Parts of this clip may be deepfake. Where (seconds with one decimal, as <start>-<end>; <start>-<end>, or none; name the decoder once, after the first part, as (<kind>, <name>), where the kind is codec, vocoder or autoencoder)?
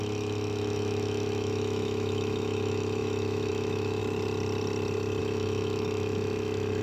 0.0-4.0 (autoencoder, DAC-VAE); 5.2-6.8